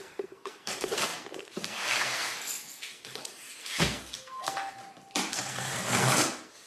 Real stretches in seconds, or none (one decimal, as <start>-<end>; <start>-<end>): 4.8-5.3